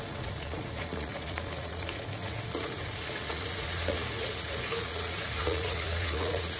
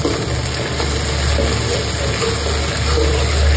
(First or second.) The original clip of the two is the second